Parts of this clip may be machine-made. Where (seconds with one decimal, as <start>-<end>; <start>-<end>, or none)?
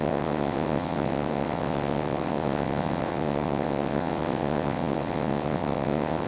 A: 0.0-6.3